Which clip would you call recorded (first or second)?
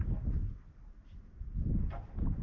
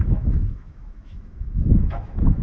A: first